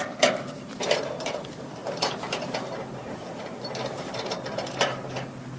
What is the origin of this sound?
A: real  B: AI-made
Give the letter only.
B